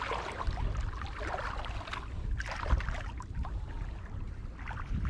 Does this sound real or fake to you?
real